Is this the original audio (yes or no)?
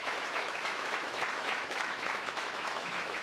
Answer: no